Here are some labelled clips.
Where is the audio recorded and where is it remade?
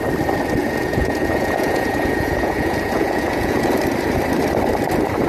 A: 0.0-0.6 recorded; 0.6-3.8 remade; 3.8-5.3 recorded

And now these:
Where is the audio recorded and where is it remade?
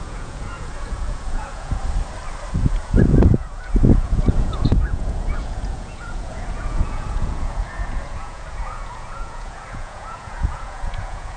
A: 0.0-1.8 remade; 1.8-2.5 recorded; 2.5-11.4 remade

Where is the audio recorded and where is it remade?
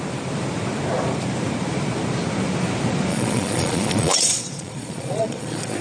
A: 0.0-3.1 recorded; 3.1-5.8 remade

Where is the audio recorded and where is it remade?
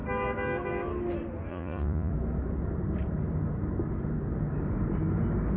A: 0.0-1.5 recorded; 1.5-2.1 remade; 2.1-5.6 recorded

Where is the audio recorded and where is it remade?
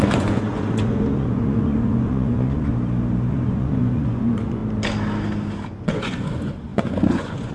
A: 0.0-2.7 remade; 2.7-3.3 recorded; 3.3-4.6 remade; 4.6-5.7 recorded; 5.7-7.5 remade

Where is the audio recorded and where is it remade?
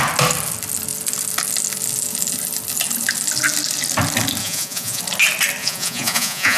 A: 0.0-4.4 recorded; 4.4-5.0 remade; 5.0-5.6 recorded; 5.6-6.6 remade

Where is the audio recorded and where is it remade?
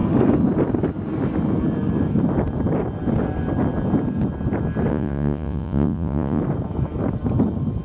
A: 0.0-4.9 recorded; 4.9-6.4 remade; 6.4-7.8 recorded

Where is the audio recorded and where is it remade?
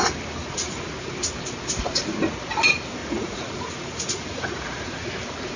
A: 0.0-0.4 recorded; 0.4-1.1 remade; 1.1-3.0 recorded; 3.0-5.1 remade; 5.1-5.6 recorded